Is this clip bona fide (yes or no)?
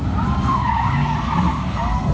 yes